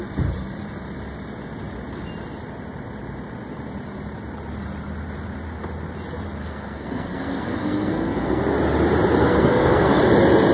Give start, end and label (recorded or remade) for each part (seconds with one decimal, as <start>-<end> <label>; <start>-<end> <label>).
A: 0.0-6.4 recorded; 6.4-8.4 remade; 8.4-9.2 recorded; 9.2-10.0 remade; 10.0-10.5 recorded